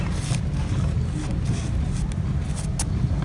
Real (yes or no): yes